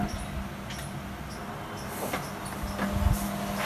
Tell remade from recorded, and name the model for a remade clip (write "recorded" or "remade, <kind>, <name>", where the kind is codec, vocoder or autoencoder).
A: recorded